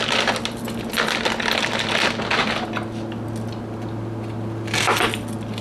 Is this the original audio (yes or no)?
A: yes